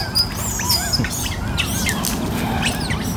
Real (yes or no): yes